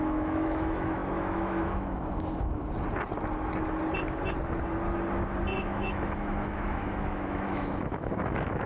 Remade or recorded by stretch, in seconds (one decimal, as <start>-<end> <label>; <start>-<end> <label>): 0.0-2.6 remade; 2.6-5.6 recorded; 5.6-8.7 remade